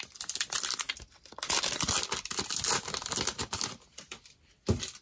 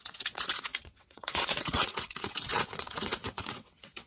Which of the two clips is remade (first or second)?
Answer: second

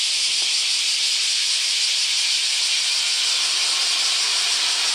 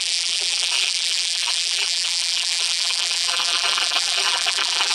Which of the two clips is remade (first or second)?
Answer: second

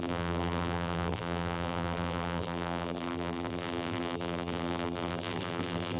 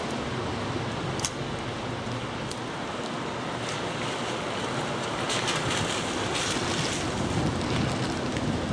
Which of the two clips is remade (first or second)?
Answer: first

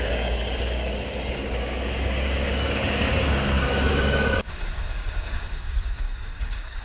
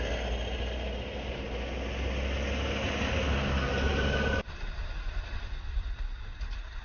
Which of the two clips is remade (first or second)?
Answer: first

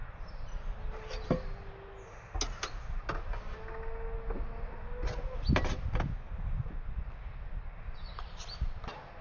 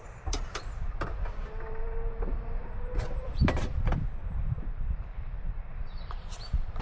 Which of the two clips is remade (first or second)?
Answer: second